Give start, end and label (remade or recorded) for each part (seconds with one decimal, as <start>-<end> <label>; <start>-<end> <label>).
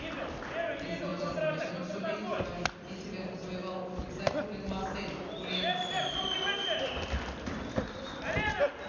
0.0-8.9 recorded